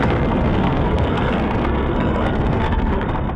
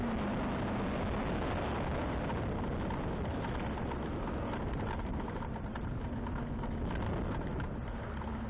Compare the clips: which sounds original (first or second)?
second